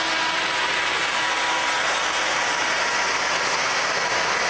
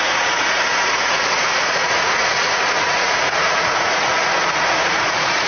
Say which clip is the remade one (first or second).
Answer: second